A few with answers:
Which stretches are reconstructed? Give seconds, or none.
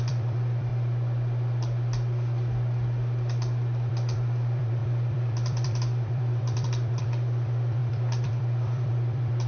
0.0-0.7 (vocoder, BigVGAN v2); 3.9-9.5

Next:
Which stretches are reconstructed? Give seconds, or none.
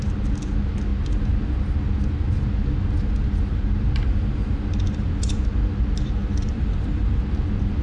6.2-7.2 (vocoder, BigVGAN v2)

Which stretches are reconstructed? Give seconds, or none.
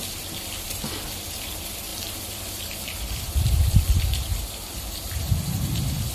1.9-4.0 (vocoder, BigVGAN v2)